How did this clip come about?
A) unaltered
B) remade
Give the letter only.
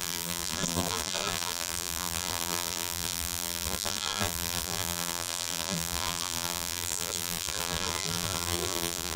B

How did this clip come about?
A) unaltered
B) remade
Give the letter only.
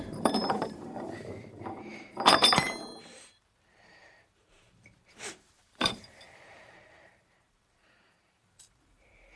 B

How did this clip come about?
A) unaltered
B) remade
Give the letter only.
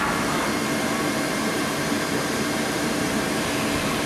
B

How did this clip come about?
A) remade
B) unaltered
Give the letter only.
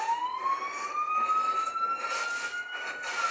B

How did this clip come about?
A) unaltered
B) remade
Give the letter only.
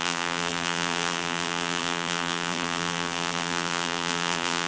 B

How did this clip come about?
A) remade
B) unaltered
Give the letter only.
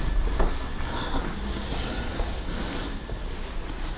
B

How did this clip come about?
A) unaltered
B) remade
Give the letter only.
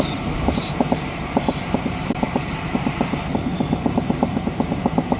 B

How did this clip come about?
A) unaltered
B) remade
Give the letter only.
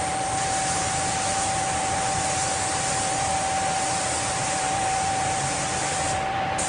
B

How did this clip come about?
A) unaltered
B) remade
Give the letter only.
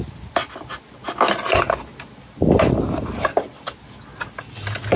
A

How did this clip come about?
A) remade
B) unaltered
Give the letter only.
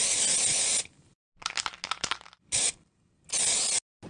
B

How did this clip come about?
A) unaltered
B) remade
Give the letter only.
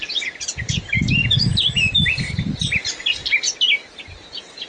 A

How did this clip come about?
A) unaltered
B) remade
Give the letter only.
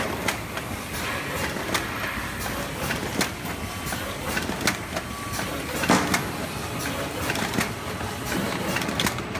A